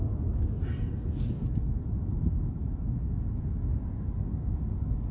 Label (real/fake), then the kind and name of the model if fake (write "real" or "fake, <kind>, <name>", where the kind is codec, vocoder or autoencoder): real